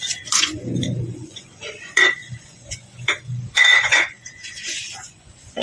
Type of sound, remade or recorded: remade